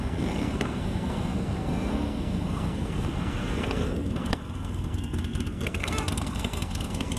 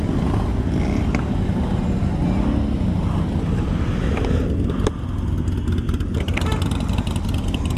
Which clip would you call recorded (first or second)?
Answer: second